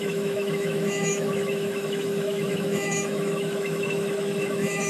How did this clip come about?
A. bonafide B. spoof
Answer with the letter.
B